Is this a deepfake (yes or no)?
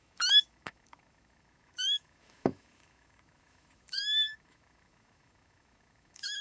yes